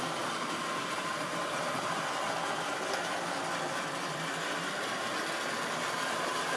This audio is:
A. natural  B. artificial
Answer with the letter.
A